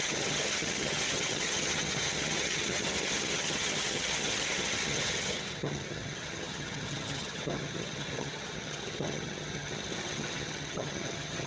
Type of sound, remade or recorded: remade